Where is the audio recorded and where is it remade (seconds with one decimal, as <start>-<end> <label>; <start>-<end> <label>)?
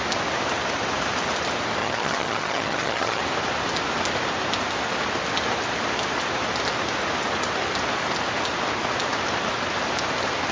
0.0-1.8 recorded; 1.8-3.2 remade; 3.2-10.5 recorded